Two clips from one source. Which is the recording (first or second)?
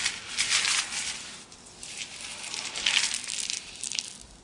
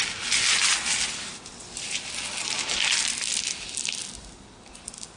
second